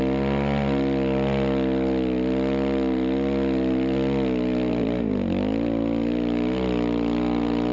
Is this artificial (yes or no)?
no